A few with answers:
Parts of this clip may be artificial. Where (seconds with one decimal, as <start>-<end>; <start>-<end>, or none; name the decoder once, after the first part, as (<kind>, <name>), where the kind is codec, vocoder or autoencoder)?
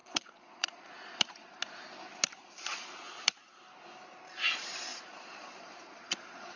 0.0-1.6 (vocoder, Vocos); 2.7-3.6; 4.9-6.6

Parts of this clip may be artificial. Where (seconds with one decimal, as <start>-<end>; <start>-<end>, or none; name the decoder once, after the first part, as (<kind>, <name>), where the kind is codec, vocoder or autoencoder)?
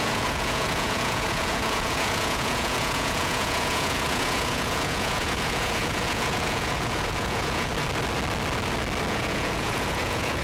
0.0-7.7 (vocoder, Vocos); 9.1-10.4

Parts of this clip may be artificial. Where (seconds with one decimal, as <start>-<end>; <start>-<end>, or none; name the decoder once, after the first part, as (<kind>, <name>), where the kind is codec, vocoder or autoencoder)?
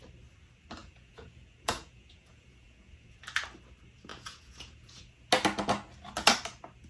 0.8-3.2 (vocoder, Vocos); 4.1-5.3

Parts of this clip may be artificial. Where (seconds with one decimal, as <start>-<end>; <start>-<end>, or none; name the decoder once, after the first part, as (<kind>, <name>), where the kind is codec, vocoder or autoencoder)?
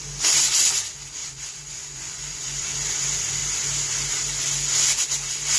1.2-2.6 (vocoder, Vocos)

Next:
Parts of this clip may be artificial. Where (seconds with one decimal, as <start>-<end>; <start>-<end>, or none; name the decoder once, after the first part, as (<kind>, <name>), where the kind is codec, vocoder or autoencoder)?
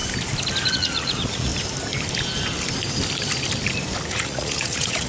0.7-1.5 (vocoder, Vocos); 4.1-5.1